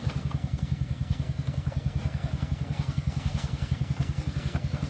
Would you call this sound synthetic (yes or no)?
yes